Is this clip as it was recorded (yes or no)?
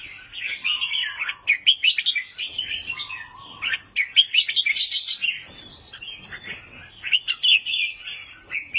yes